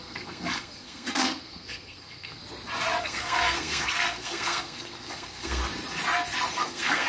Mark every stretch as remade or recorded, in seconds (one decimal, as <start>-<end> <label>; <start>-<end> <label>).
0.0-2.4 remade; 2.4-3.0 recorded; 3.0-5.6 remade; 5.6-6.5 recorded; 6.5-7.1 remade